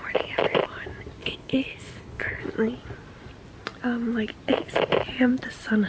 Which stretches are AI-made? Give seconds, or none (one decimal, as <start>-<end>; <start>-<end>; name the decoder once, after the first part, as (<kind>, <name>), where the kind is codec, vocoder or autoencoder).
1.2-2.4 (codec, HILCodec)